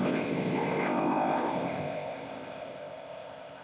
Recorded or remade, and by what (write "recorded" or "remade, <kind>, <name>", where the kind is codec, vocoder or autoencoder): remade, codec, ZipCodec